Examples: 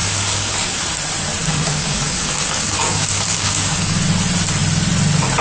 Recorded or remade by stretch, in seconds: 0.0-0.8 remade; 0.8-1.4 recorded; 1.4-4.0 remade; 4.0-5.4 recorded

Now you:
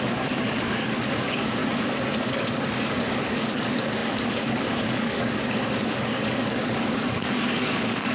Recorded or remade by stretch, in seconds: 0.0-1.6 remade; 1.6-2.4 recorded; 2.4-8.1 remade

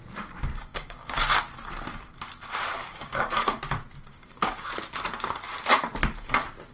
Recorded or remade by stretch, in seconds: 0.0-0.7 recorded; 0.7-1.4 remade; 1.4-2.8 recorded; 2.8-3.6 remade; 3.6-4.1 recorded; 4.1-4.7 remade; 4.7-6.7 recorded

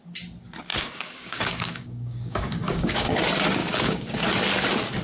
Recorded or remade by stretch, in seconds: 0.0-0.7 recorded; 0.7-3.2 remade; 3.2-3.6 recorded; 3.6-4.2 remade; 4.2-5.0 recorded

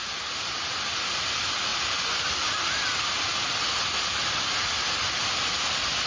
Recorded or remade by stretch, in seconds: 0.0-6.1 recorded

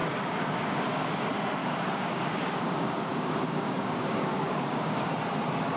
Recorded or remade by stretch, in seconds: 0.0-1.1 remade; 1.1-1.6 recorded; 1.6-5.1 remade; 5.1-5.8 recorded

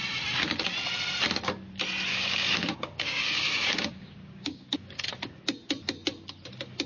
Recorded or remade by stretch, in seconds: 0.0-2.1 recorded; 2.1-5.1 remade; 5.1-6.9 recorded